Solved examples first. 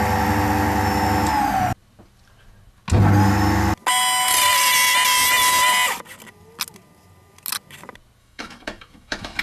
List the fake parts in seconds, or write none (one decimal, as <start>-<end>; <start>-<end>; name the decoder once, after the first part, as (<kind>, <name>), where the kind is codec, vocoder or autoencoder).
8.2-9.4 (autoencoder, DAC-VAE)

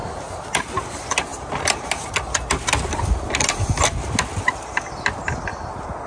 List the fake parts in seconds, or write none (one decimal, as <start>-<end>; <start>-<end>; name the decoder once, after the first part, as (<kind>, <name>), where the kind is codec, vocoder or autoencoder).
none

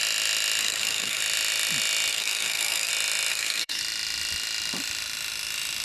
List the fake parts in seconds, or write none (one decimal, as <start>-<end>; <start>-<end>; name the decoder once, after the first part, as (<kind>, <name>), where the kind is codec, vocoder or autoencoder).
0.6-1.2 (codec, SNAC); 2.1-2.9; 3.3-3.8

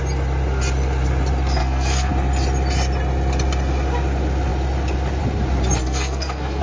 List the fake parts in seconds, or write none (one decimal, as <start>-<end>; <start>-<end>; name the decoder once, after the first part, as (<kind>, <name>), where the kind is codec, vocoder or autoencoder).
1.6-2.1 (codec, SNAC); 5.8-6.6

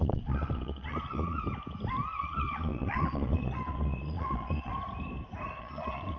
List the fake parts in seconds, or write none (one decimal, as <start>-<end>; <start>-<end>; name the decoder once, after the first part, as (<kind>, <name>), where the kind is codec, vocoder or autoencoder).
0.0-1.4 (vocoder, Vocos); 2.2-4.7; 5.6-6.2